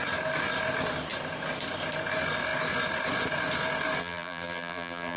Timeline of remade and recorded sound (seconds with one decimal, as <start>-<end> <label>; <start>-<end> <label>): 0.0-4.0 recorded; 4.0-5.2 remade